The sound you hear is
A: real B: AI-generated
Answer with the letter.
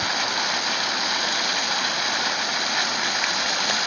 A